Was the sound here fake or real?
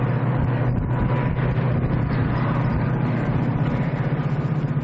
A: fake